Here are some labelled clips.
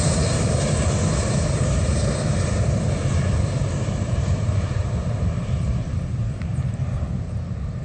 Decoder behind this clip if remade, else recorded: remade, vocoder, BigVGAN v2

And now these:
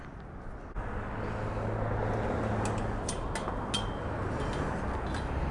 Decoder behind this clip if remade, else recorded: recorded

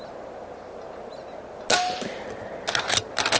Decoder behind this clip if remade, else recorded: recorded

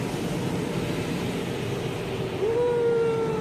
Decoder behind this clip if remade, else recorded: recorded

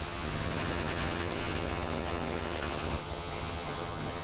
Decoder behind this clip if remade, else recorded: remade, vocoder, HiFi-GAN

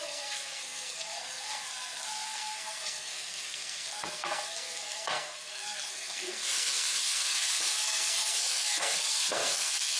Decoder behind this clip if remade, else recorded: remade, codec, SNAC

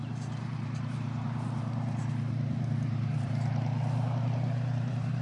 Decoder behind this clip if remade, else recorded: remade, vocoder, BigVGAN v2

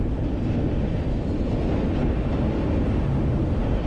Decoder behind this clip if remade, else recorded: recorded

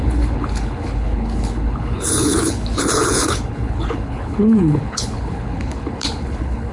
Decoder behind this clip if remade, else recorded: remade, codec, HILCodec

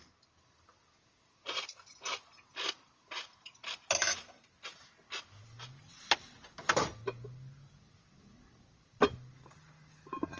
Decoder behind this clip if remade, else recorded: recorded